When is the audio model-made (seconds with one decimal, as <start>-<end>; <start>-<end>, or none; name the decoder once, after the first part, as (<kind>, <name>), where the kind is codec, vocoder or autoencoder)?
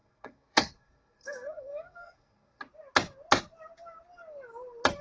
0.0-2.6 (codec, SNAC)